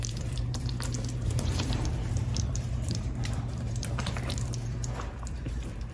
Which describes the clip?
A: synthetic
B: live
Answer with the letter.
A